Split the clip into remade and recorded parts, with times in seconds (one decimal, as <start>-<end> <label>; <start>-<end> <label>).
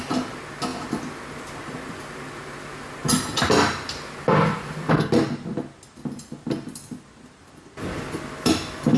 0.0-9.0 recorded